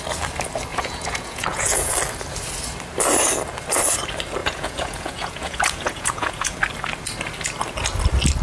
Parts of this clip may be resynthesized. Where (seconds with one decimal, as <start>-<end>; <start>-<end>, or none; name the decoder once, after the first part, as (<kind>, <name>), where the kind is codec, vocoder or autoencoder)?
0.7-1.9 (vocoder, Vocos); 4.4-6.6